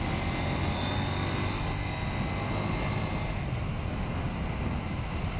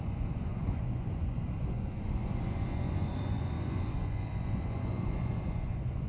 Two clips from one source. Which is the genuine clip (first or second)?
first